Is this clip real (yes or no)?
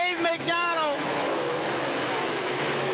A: no